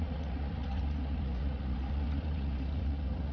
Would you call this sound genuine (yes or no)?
no